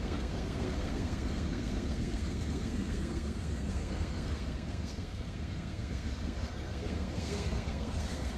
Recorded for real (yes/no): no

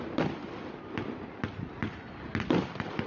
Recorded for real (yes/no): yes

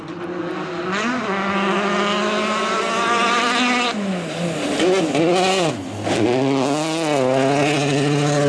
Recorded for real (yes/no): yes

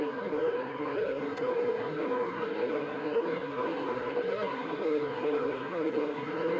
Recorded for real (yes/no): no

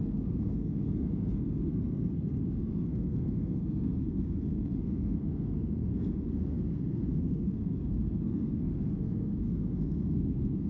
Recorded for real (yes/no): no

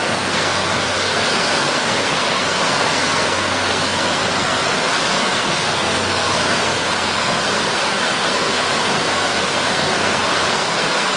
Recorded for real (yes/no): no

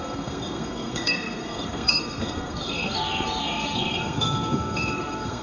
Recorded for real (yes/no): no